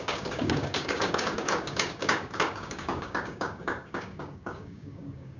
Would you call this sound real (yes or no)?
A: no